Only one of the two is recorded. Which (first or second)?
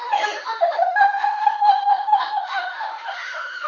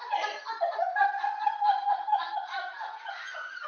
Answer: second